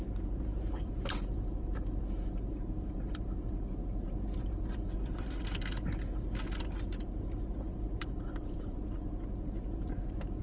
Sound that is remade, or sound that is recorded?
remade